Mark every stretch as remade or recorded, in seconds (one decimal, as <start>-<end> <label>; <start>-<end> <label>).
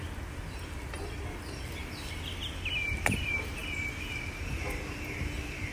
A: 0.0-5.7 recorded